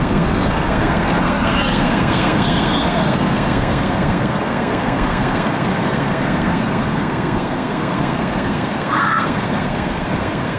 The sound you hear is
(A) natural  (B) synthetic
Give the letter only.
B